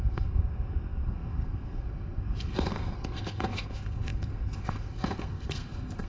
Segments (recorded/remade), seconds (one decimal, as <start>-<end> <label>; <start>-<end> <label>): 0.0-6.1 remade